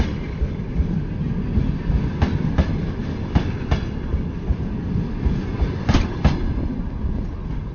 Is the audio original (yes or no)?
yes